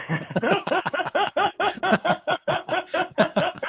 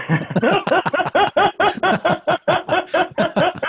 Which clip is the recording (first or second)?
second